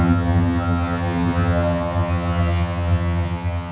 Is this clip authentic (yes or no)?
no